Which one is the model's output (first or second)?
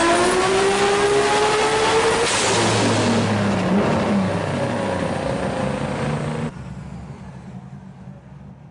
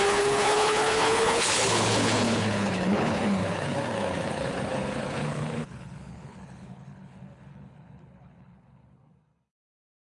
second